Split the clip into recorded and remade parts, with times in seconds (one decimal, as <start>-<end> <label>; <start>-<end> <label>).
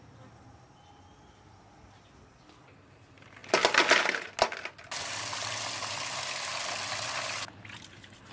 0.0-8.3 recorded